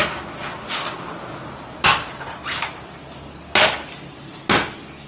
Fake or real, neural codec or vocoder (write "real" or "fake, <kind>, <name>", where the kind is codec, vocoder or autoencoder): real